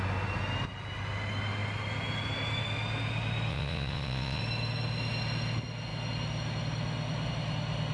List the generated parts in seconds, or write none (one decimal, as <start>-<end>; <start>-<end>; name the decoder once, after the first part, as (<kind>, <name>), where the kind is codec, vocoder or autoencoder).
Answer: 3.5-4.4 (vocoder, Vocos)